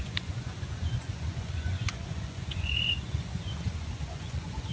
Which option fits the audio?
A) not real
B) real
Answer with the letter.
A